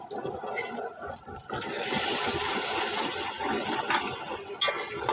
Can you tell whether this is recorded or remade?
recorded